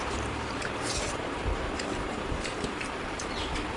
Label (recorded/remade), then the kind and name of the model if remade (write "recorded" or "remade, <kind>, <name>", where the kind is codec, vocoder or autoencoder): remade, vocoder, BigVGAN v2